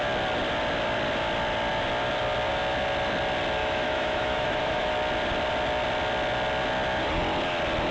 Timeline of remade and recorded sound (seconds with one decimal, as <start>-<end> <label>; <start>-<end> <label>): 0.0-3.6 recorded; 3.6-4.9 remade; 4.9-7.9 recorded